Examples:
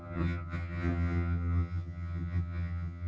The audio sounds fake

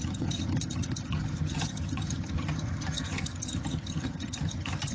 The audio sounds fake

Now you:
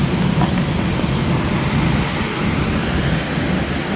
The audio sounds real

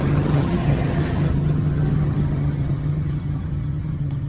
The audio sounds fake